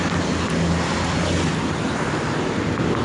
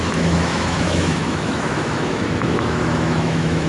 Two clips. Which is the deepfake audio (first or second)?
second